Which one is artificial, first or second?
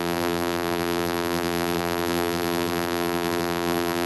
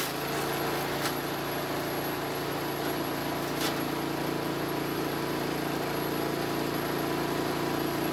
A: first